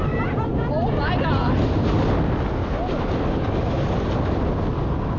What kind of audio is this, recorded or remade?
recorded